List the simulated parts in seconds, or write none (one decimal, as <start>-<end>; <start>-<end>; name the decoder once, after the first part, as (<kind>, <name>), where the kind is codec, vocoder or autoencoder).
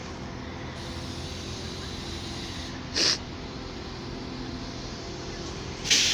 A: 1.3-3.3 (vocoder, BigVGAN v2); 4.6-6.1